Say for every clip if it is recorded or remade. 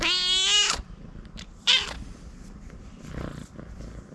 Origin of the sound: recorded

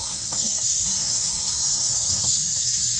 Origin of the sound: remade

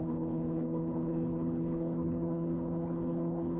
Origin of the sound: remade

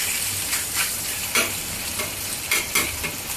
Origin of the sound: remade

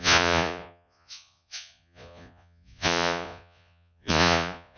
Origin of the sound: remade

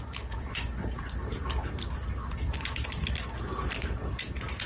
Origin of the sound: recorded